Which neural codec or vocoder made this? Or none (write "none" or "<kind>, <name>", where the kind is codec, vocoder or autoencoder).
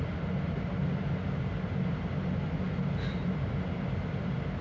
none